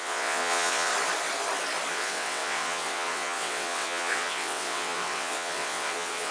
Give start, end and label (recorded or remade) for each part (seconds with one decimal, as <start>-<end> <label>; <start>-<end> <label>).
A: 0.0-0.9 remade; 0.9-1.9 recorded; 1.9-6.3 remade